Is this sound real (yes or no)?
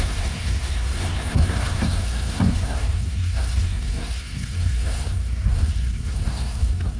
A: no